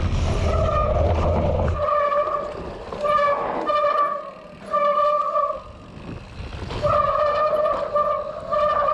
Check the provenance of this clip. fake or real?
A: real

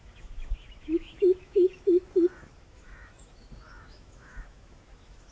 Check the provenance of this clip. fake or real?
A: fake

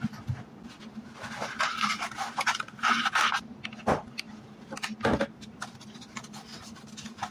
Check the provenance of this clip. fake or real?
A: real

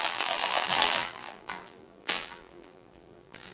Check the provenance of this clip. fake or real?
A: fake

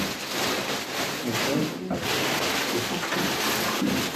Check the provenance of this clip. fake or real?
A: real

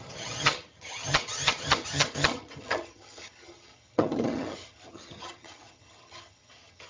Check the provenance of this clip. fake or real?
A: fake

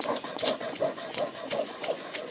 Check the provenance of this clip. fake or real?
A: fake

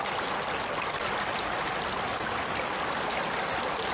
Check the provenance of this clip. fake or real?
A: real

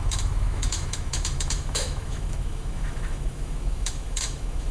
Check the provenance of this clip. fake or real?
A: fake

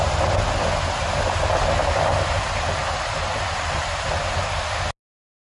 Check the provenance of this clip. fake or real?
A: real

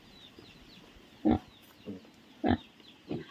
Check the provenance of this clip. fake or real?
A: real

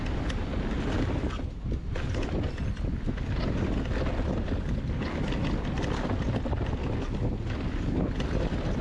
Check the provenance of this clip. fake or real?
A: real